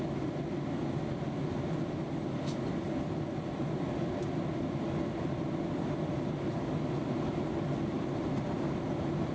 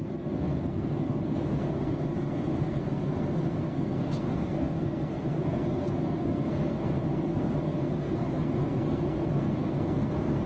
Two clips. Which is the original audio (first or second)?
first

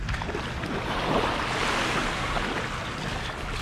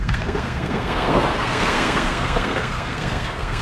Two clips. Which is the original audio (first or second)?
first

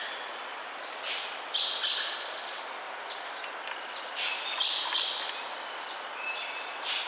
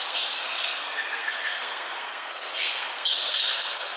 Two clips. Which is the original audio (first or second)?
first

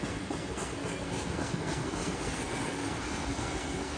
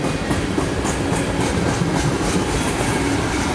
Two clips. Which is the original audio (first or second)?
second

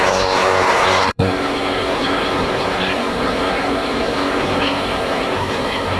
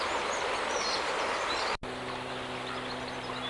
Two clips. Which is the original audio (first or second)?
second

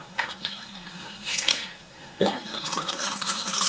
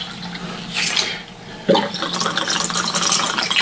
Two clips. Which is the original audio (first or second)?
second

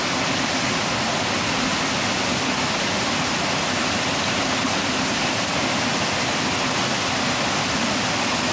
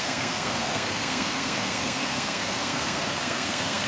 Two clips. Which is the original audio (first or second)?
first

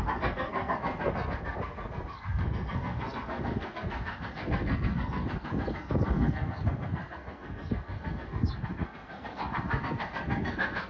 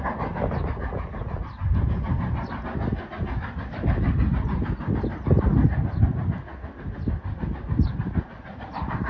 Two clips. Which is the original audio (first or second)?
second